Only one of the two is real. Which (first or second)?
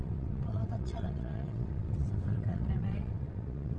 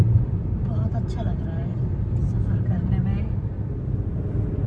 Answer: second